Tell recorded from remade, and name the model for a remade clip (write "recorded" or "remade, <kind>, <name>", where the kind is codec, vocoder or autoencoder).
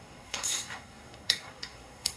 remade, codec, SNAC